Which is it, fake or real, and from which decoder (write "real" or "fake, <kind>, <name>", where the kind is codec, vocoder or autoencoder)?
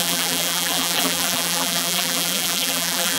fake, vocoder, BigVGAN v2